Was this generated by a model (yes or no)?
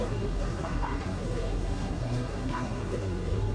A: yes